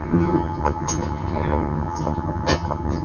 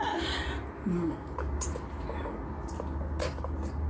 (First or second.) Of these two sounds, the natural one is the second